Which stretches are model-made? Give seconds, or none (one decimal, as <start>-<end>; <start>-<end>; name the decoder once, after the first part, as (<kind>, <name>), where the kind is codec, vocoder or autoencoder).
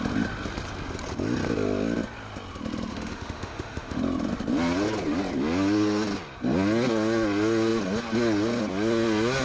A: 2.9-4.0 (autoencoder, DAC-VAE)